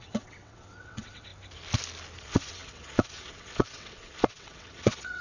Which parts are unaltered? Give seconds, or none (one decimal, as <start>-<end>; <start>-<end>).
1.3-2.2